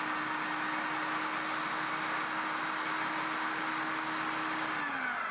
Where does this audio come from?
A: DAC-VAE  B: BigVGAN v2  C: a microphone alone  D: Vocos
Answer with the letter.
C